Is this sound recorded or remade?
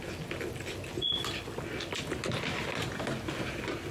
recorded